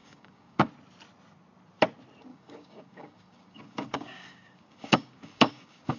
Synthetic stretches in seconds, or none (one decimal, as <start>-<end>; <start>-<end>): 0.0-0.7; 2.3-6.0